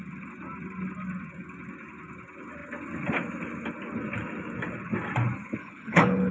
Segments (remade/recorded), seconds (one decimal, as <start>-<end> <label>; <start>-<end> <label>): 0.0-5.6 recorded; 5.6-6.3 remade